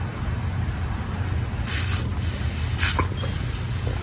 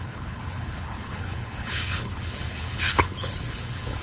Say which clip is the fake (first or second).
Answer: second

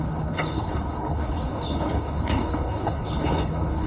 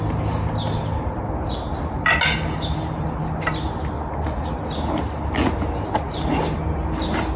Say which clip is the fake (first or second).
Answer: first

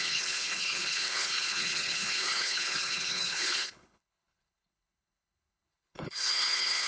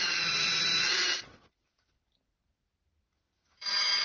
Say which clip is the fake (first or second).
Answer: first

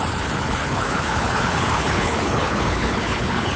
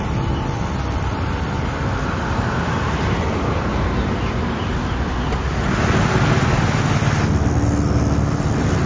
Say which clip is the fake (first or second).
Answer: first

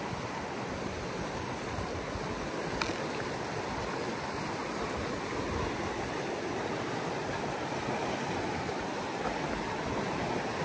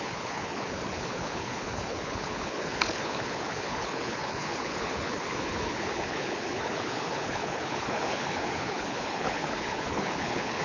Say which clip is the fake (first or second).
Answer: second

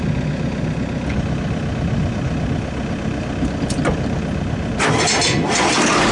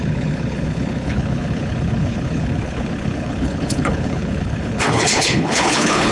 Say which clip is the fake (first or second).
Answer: second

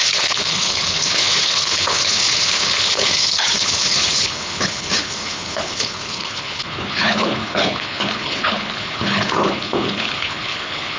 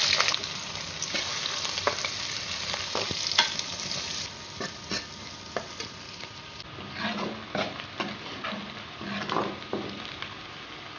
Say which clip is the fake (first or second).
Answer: first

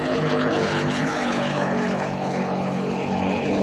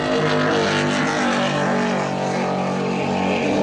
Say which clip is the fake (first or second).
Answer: first